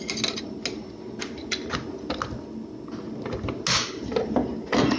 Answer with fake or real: real